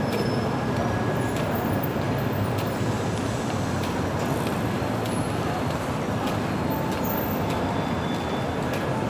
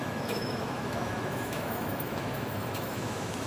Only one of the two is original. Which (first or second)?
first